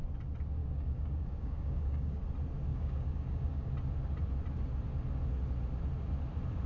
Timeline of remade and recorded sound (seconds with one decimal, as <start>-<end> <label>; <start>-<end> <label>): 0.0-0.6 recorded; 0.6-2.2 remade; 2.2-2.7 recorded; 2.7-3.7 remade; 3.7-6.7 recorded